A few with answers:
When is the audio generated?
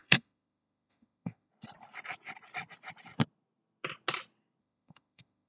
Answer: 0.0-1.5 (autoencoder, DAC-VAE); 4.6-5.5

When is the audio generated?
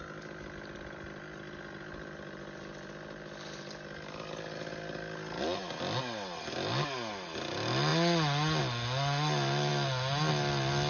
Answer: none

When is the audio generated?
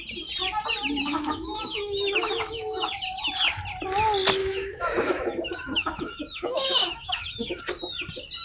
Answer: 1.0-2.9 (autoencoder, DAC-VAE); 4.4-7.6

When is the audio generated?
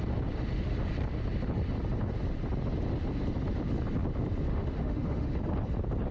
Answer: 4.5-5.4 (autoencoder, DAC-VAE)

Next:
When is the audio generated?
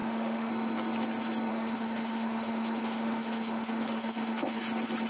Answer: 0.0-0.5 (autoencoder, DAC-VAE); 1.5-4.6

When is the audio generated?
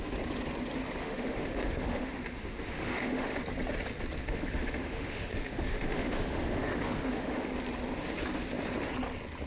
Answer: 1.0-3.4 (autoencoder, DAC-VAE); 4.2-7.5